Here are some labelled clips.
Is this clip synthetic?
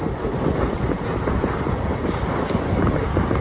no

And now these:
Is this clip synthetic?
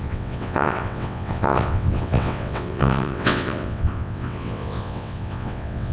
yes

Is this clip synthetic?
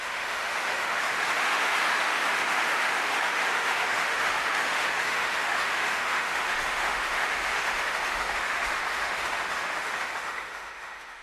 yes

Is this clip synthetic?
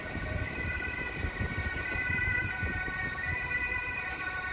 yes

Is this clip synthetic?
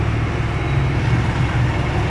no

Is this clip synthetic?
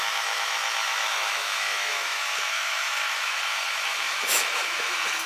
yes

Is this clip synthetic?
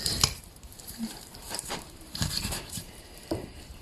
yes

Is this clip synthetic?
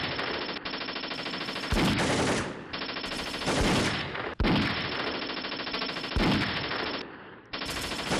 no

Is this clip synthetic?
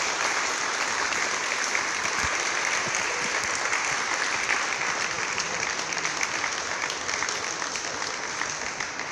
no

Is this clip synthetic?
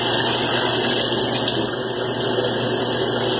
no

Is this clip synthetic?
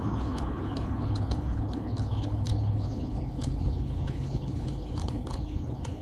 yes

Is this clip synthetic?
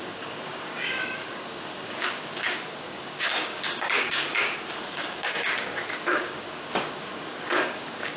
yes